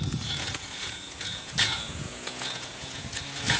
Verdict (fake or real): fake